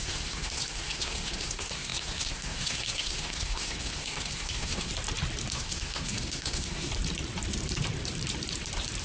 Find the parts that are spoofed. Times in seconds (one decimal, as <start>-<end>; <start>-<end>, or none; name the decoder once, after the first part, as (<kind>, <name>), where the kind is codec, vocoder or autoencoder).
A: 0.0-4.9 (codec, SNAC); 5.5-6.9